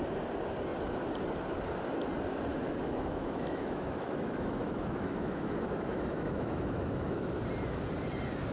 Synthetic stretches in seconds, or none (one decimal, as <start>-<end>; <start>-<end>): 2.5-7.4